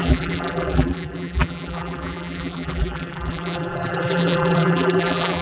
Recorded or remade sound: remade